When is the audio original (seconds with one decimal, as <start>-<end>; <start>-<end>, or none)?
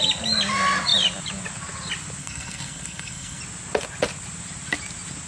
0.0-2.2; 3.4-5.3